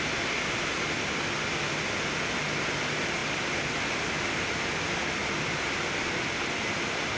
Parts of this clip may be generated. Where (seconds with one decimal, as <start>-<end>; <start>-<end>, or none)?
none